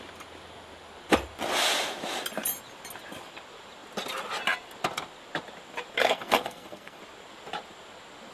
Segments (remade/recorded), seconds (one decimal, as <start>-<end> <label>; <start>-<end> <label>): 0.0-6.0 recorded; 6.0-7.0 remade; 7.0-8.3 recorded